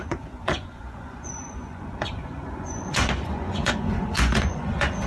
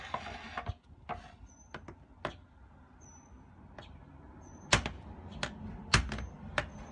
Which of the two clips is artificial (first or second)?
first